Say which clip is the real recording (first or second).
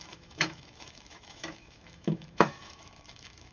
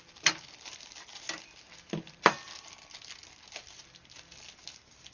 second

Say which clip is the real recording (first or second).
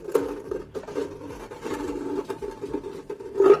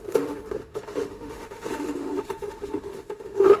first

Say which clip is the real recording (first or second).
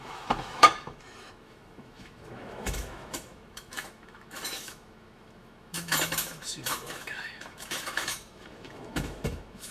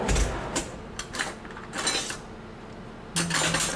second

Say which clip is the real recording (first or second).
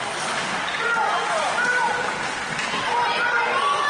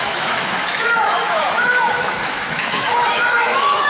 first